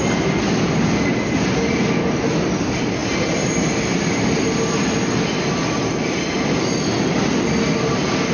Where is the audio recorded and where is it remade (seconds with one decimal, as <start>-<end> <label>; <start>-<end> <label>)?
0.0-8.3 recorded